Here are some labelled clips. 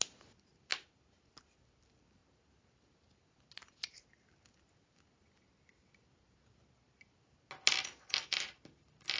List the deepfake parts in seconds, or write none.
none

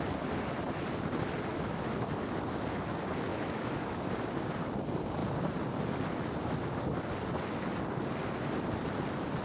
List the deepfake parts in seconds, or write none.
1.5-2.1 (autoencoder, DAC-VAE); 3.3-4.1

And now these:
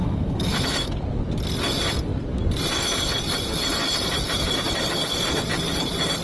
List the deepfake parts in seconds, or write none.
0.0-0.9 (autoencoder, DAC-VAE)